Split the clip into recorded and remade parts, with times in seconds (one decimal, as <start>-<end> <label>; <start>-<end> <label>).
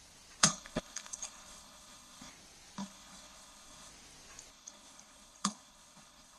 0.0-0.4 recorded; 0.4-2.3 remade; 2.3-2.8 recorded; 2.8-3.9 remade; 3.9-4.5 recorded; 4.5-6.4 remade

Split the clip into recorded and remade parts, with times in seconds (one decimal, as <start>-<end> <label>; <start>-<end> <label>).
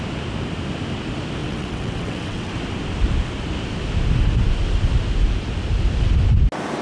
0.0-1.4 recorded; 1.4-2.5 remade; 2.5-6.8 recorded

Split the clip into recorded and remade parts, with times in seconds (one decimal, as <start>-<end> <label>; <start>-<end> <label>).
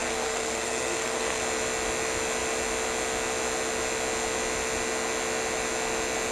0.0-1.4 remade; 1.4-6.3 recorded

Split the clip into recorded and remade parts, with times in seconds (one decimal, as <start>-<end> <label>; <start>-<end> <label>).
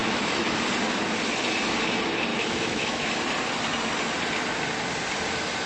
0.0-0.6 remade; 0.6-2.3 recorded; 2.3-3.1 remade; 3.1-5.7 recorded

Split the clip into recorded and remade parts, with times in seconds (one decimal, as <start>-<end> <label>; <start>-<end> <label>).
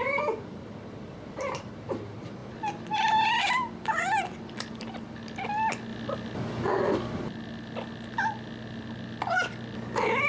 0.0-10.3 recorded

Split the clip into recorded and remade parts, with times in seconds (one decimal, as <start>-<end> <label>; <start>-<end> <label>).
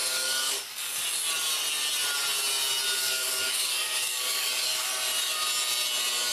0.0-1.0 remade; 1.0-3.0 recorded; 3.0-4.9 remade; 4.9-6.3 recorded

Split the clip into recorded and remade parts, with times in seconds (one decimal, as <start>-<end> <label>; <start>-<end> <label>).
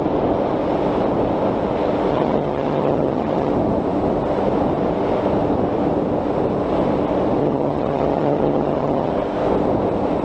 0.0-2.1 recorded; 2.1-3.5 remade; 3.5-7.4 recorded; 7.4-9.1 remade; 9.1-10.2 recorded